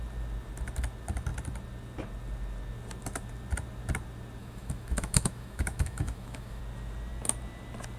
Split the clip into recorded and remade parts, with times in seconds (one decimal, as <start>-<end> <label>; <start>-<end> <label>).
0.0-4.4 recorded; 4.4-6.6 remade; 6.6-8.0 recorded